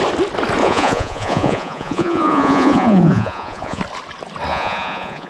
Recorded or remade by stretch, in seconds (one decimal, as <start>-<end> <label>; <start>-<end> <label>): 0.0-0.6 recorded; 0.6-3.8 remade; 3.8-4.5 recorded; 4.5-5.3 remade